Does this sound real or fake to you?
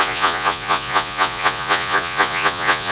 fake